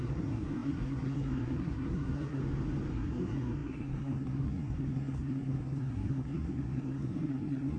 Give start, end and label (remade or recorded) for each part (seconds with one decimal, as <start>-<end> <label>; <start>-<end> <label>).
0.0-2.4 remade; 2.4-2.9 recorded; 2.9-7.8 remade